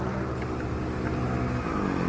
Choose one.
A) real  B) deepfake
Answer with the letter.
A